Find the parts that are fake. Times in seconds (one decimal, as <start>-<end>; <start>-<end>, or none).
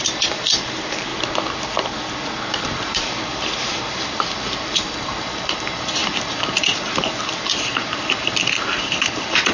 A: 0.0-1.1; 2.5-9.5